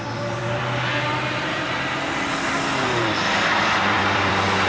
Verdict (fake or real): fake